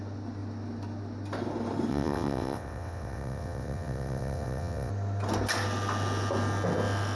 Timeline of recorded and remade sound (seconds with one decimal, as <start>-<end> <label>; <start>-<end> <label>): 0.0-1.9 recorded; 1.9-4.9 remade; 4.9-7.2 recorded